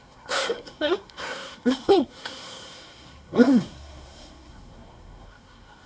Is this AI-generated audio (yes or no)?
yes